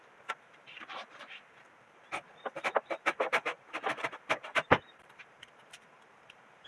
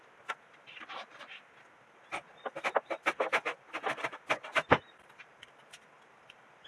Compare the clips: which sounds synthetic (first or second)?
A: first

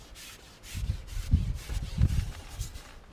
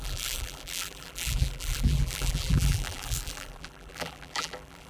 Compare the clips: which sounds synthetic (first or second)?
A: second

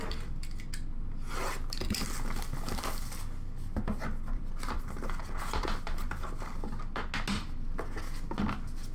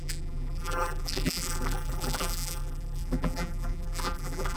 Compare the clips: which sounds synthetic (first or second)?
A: second